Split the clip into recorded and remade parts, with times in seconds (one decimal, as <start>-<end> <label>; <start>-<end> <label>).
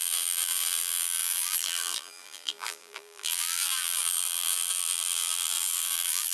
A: 0.0-6.3 remade